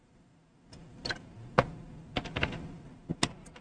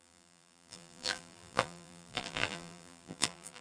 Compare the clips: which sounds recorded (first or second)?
first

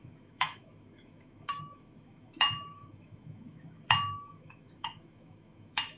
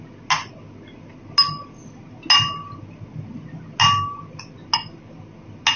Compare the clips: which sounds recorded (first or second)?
second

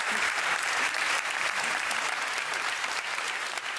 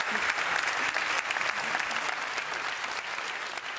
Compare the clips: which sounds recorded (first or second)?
second